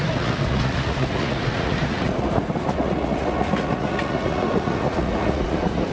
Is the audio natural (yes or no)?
no